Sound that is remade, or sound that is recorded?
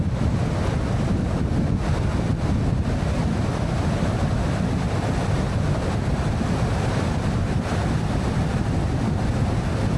recorded